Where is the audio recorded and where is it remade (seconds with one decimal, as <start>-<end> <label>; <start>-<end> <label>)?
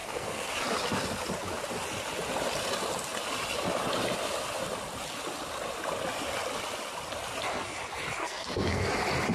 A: 0.0-0.5 remade; 0.5-8.2 recorded; 8.2-8.9 remade; 8.9-9.3 recorded